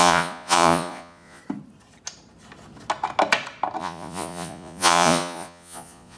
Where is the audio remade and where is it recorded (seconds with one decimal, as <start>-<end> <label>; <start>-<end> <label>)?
0.0-1.4 remade; 1.4-3.8 recorded; 3.8-6.2 remade